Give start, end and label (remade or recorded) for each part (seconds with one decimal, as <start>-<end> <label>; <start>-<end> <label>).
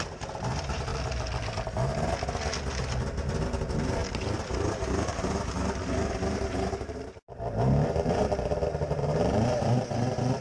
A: 0.0-0.9 remade; 0.9-3.6 recorded; 3.6-4.0 remade; 4.0-4.5 recorded; 4.5-10.4 remade